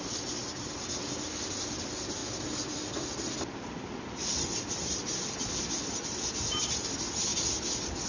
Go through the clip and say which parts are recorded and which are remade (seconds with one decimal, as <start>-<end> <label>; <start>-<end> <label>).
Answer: 0.0-8.1 recorded